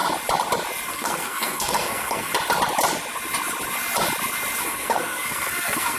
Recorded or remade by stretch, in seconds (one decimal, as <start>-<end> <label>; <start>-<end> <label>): 0.0-0.9 recorded; 0.9-2.3 remade; 2.3-4.6 recorded; 4.6-6.0 remade